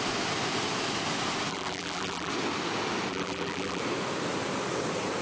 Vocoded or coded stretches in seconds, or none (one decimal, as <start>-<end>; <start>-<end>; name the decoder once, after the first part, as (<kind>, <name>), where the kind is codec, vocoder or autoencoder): 1.5-2.3 (vocoder, BigVGAN v2); 3.1-3.8